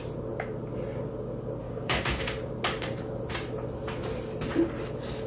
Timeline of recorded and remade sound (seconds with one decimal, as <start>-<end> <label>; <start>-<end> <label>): 0.0-1.6 recorded; 1.6-2.2 remade; 2.2-5.3 recorded